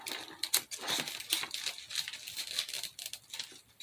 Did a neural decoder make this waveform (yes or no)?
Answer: no